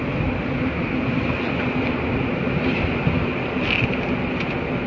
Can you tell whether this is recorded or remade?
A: recorded